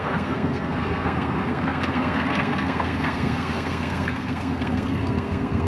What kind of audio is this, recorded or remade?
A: remade